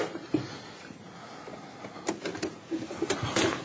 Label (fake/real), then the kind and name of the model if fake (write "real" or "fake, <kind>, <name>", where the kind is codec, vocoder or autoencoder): real